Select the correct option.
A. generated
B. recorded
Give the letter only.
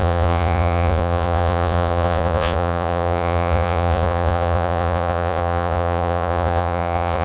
A